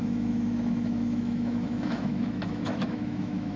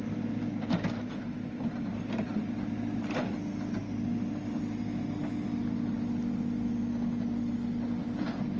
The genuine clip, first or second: second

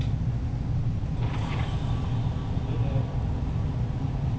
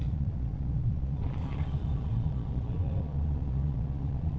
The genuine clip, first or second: first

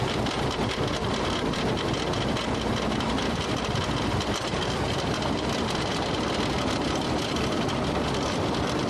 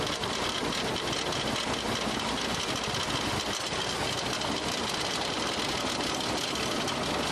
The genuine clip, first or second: second